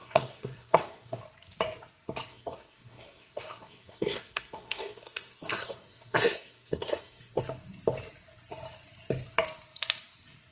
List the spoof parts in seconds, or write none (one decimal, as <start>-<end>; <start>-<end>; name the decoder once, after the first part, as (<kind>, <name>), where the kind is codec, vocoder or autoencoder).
0.0-1.2 (codec, SNAC); 2.3-7.4